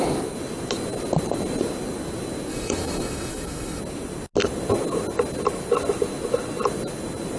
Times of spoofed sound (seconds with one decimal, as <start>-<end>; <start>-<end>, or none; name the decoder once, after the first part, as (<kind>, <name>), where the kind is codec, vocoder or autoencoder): 2.5-3.8 (autoencoder, DAC-VAE)